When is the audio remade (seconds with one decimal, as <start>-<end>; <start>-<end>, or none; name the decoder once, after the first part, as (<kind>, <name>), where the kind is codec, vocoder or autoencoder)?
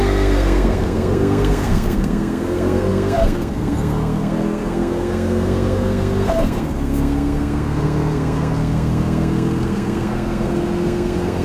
0.0-11.4 (codec, SNAC)